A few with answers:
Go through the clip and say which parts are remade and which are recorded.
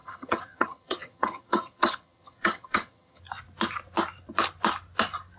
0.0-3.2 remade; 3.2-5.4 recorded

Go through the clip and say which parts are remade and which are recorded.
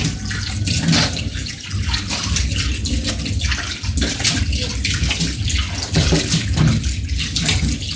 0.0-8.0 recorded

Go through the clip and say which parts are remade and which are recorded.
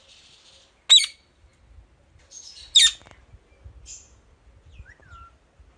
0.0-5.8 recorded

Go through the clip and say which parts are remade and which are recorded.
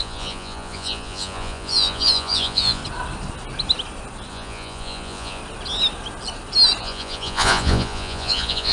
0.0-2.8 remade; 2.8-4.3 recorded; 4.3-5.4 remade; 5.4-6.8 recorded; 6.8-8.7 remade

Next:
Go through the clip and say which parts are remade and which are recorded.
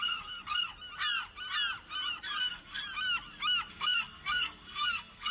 0.0-0.7 remade; 0.7-2.4 recorded; 2.4-2.8 remade; 2.8-3.7 recorded; 3.7-5.3 remade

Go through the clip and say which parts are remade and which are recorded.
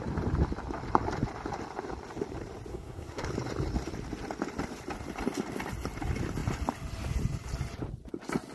0.0-2.7 recorded; 2.7-3.3 remade; 3.3-8.5 recorded